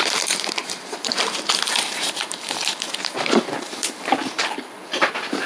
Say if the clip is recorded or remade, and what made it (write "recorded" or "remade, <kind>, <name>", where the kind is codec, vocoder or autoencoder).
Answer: remade, vocoder, BigVGAN v2